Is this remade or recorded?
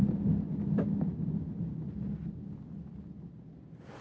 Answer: recorded